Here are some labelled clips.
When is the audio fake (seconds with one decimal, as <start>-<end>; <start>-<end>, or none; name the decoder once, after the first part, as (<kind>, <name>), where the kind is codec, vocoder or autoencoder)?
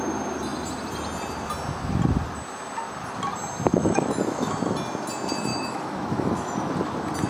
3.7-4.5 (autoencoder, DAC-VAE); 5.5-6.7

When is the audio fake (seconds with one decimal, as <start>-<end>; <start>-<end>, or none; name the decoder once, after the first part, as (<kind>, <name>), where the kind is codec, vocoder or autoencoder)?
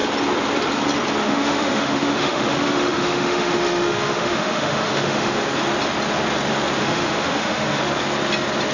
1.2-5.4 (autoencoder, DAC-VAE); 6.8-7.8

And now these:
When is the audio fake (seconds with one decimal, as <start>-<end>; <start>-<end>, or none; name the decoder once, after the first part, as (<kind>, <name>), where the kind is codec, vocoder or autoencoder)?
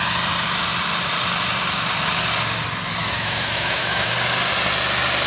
3.0-4.1 (autoencoder, DAC-VAE)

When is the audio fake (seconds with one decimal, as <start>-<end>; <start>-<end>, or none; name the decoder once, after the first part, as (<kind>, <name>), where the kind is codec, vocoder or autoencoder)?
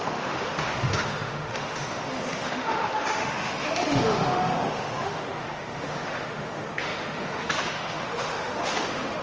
0.0-9.2 (autoencoder, DAC-VAE)